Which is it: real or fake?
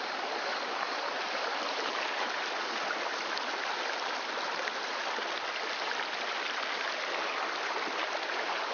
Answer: real